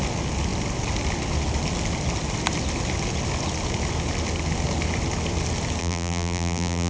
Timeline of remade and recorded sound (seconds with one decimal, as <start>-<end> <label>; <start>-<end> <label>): 0.0-5.8 recorded; 5.8-6.9 remade